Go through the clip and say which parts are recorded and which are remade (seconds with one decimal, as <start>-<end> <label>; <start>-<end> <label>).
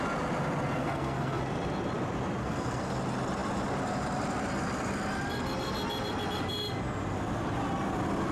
0.0-0.8 recorded; 0.8-1.4 remade; 1.4-2.4 recorded; 2.4-2.9 remade; 2.9-8.3 recorded